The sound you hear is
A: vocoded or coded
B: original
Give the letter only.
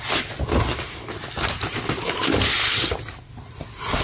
B